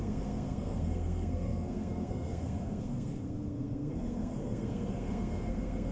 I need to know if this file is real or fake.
fake